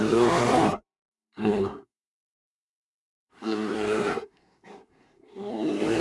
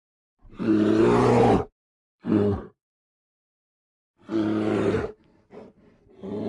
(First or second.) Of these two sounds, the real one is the second